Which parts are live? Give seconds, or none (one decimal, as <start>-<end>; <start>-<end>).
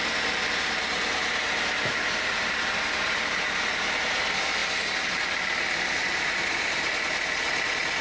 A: 0.0-8.0